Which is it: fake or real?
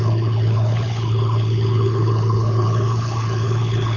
fake